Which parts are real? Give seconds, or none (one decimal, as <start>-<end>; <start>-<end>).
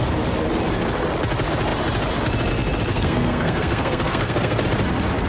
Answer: 0.0-2.9; 4.6-5.3